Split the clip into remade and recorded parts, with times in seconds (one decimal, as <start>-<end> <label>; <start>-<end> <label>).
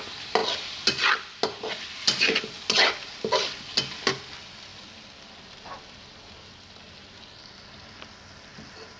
0.0-9.0 recorded